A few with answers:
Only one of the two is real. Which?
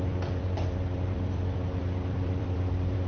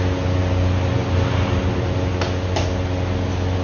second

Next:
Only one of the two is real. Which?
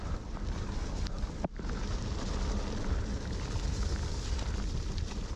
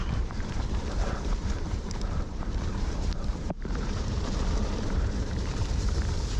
first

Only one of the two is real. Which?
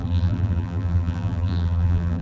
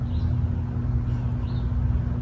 second